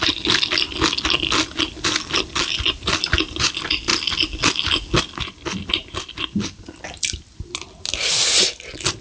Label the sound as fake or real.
real